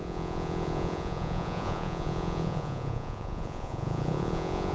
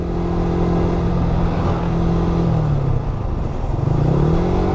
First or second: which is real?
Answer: second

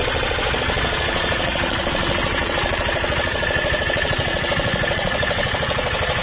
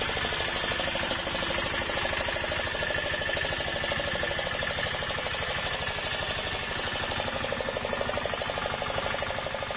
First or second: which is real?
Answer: second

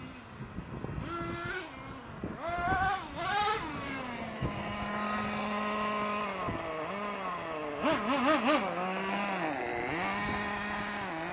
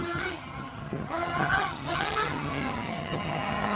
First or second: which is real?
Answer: first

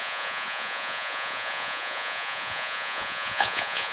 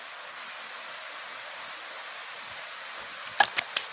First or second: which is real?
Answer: second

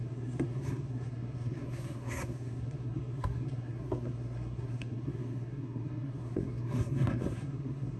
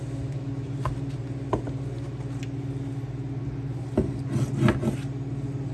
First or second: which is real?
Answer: second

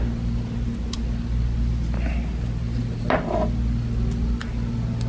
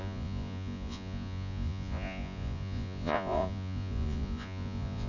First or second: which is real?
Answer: first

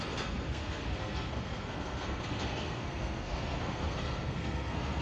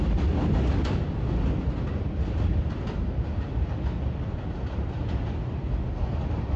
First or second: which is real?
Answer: second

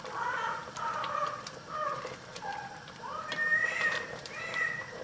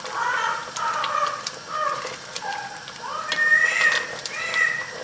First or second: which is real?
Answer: second